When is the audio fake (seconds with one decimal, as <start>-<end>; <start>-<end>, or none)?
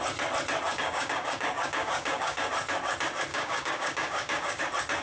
0.7-2.5; 3.3-4.6